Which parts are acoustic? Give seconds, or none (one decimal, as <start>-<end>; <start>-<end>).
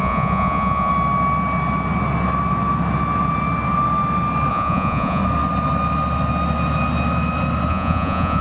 0.9-4.5; 5.2-7.7